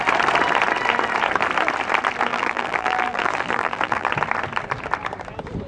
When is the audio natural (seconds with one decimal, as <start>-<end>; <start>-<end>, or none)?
0.0-2.3; 4.1-5.7